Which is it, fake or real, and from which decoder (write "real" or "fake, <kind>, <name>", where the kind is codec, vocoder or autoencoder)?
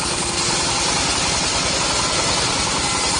real